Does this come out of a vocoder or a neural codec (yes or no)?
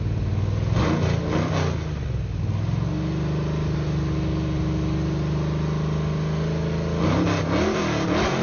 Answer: no